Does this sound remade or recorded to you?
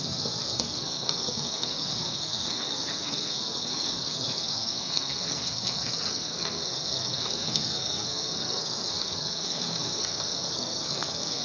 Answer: remade